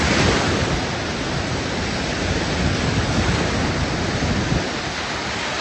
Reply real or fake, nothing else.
real